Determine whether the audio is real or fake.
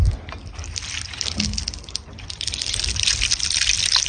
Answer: real